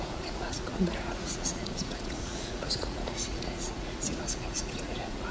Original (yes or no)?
no